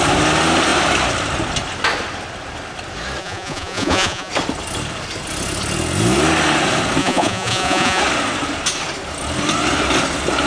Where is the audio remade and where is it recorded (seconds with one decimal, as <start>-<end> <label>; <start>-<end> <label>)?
0.0-3.2 recorded; 3.2-4.3 remade; 4.3-7.0 recorded; 7.0-8.0 remade; 8.0-10.5 recorded